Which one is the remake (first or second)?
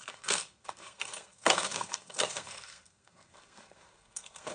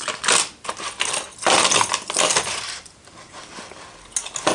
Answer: first